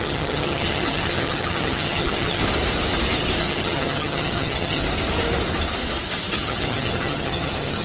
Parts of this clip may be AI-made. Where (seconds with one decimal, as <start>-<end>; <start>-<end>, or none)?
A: 0.0-2.4; 3.4-4.8; 6.3-7.8